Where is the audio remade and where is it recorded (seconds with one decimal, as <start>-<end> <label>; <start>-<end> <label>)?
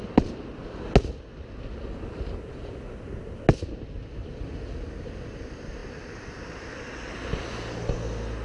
0.0-5.8 recorded; 5.8-7.1 remade; 7.1-8.4 recorded